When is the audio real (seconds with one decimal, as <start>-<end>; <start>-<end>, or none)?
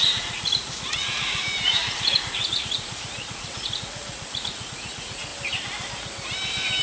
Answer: 5.3-6.8